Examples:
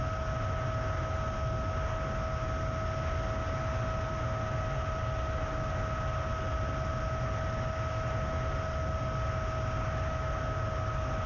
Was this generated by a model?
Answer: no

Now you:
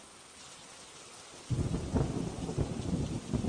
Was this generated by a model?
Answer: no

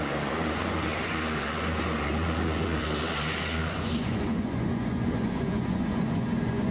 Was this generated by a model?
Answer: yes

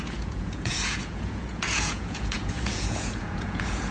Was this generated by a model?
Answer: yes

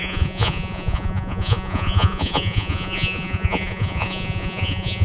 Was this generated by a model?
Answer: yes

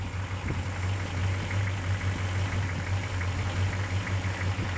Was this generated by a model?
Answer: no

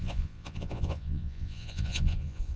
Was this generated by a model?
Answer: yes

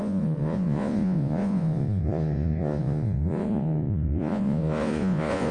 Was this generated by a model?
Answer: yes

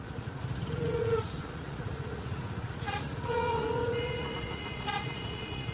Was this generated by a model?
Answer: yes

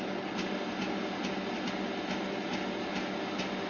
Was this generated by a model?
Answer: no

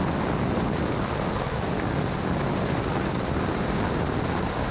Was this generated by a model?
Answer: no